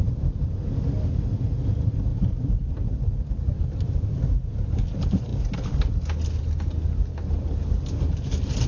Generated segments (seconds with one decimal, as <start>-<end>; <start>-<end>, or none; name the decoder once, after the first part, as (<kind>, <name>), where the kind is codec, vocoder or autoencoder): 2.1-2.7 (vocoder, BigVGAN v2)